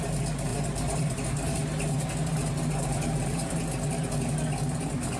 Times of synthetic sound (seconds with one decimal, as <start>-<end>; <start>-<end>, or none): 0.5-3.6